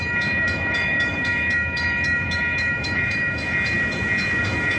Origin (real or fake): fake